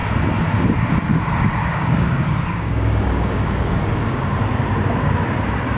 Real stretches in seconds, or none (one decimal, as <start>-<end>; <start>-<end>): 0.0-1.6; 5.1-5.8